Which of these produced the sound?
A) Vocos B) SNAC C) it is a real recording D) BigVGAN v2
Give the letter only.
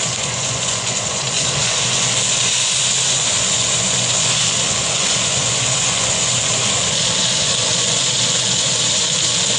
A